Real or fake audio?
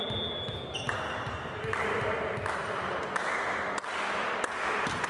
real